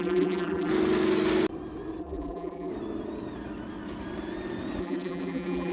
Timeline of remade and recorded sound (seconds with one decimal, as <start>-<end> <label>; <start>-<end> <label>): 0.0-0.7 remade; 0.7-2.0 recorded; 2.0-2.7 remade; 2.7-4.8 recorded; 4.8-5.7 remade